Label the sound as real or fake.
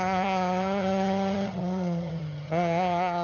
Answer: fake